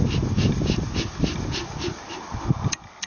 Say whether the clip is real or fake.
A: real